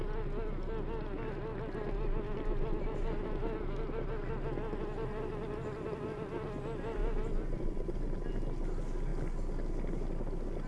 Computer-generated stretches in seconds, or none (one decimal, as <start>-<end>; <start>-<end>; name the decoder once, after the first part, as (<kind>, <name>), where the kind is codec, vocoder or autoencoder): none